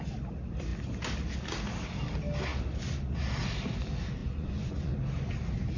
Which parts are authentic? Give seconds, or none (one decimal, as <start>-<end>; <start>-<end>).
0.0-4.2; 4.9-5.8